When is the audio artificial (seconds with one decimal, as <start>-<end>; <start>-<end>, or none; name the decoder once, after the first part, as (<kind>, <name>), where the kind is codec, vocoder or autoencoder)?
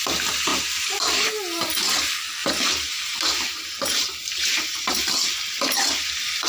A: 0.5-1.3 (vocoder, BigVGAN v2); 2.4-6.5